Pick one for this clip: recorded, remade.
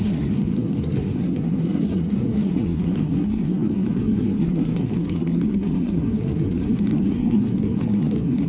remade